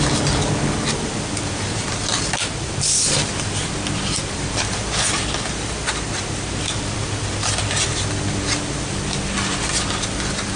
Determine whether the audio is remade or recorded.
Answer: recorded